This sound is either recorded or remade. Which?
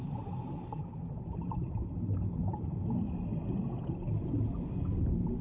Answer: recorded